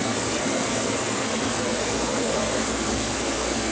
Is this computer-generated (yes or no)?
yes